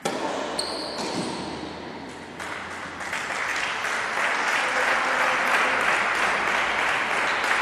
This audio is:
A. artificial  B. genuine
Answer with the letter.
B